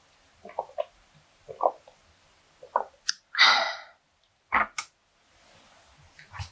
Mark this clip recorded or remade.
recorded